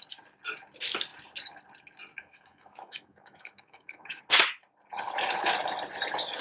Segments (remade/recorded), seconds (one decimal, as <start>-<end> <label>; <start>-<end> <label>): 0.0-2.1 recorded; 2.1-4.2 remade; 4.2-6.4 recorded